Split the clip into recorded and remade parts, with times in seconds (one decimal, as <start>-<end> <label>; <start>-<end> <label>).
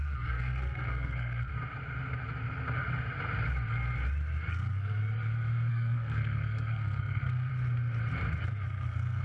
0.0-1.5 remade; 1.5-4.5 recorded; 4.5-5.0 remade; 5.0-5.7 recorded; 5.7-7.5 remade; 7.5-8.7 recorded; 8.7-9.2 remade